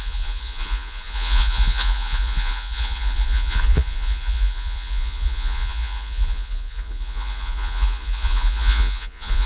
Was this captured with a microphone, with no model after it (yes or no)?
no